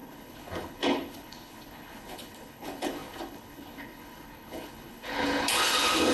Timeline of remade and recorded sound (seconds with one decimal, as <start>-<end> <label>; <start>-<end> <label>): 0.0-6.1 remade